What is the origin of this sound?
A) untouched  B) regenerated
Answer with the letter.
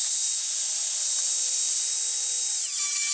A